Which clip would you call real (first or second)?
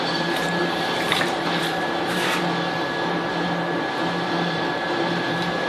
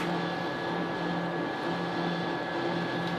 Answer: second